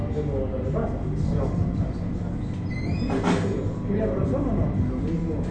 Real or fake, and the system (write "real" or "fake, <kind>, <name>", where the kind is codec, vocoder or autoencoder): real